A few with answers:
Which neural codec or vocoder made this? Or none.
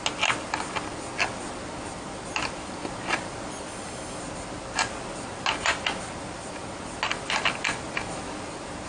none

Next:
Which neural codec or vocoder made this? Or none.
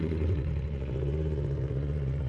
vocoder, Vocos